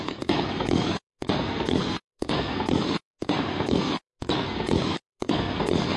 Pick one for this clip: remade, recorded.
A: remade